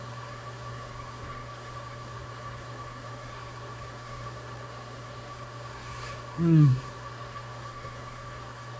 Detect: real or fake fake